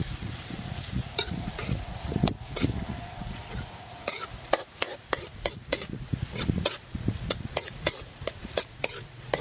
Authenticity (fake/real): fake